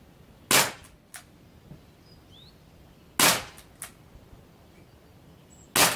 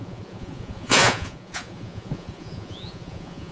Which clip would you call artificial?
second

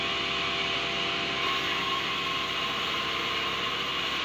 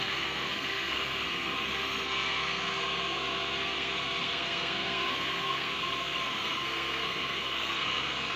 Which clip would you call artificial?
second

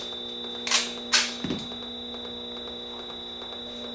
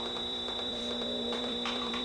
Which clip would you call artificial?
second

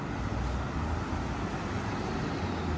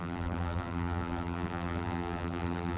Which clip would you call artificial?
second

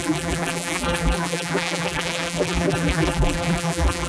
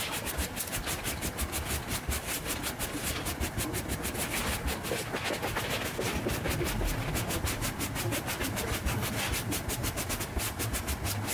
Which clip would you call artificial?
first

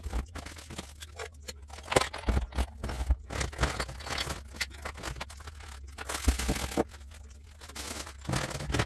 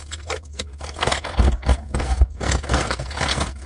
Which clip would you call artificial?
second